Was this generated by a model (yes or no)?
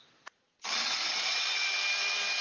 no